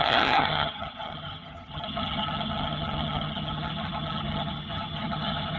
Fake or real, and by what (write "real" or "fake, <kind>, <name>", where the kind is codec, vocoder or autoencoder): fake, vocoder, HiFi-GAN